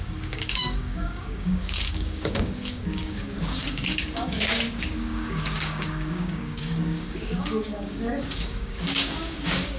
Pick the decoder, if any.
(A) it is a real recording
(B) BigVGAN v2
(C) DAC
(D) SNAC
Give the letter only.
C